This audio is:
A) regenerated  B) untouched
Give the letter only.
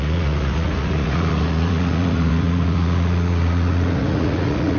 A